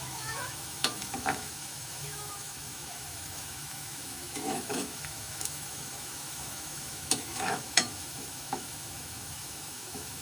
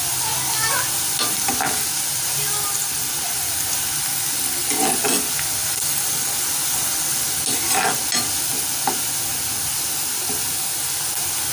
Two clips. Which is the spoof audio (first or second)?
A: first